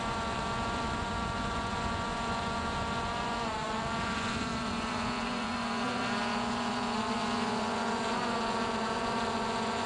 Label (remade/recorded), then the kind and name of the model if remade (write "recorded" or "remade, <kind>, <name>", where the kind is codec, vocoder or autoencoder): remade, vocoder, Vocos